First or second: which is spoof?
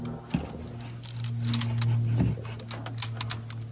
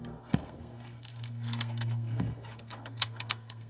second